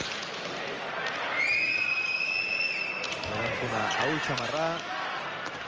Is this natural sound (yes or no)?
yes